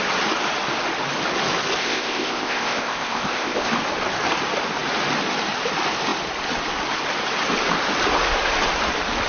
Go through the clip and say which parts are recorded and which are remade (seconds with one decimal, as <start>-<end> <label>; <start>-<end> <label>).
0.0-1.8 recorded; 1.8-3.7 remade; 3.7-9.3 recorded